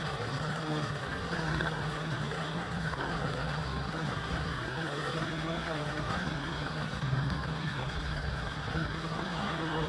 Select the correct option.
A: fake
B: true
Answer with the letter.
A